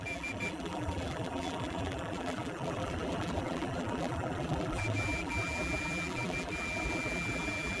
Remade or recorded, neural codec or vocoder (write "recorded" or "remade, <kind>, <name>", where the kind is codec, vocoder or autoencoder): remade, vocoder, BigVGAN v2